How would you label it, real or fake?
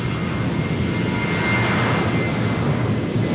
real